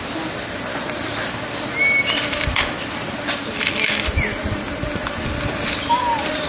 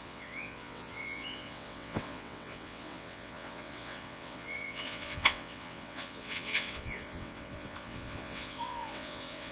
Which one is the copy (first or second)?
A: second